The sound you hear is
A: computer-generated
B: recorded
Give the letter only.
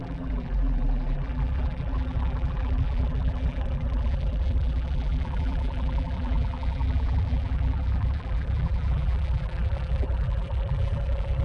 A